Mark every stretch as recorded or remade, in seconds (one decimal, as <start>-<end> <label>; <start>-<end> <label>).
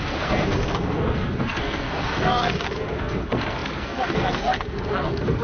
0.0-5.4 remade